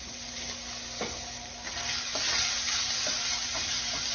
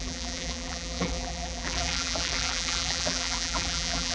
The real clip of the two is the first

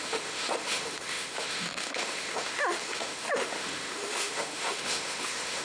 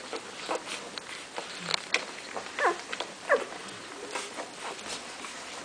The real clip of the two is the second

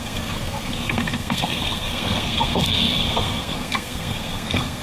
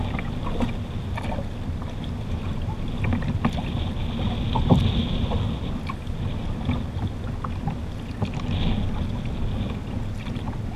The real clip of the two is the second